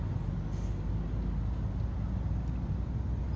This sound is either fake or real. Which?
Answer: real